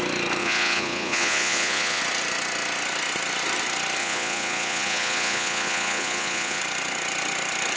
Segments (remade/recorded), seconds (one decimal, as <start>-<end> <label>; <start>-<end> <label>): 0.0-0.4 recorded; 0.4-2.0 remade; 2.0-4.0 recorded; 4.0-6.6 remade; 6.6-7.8 recorded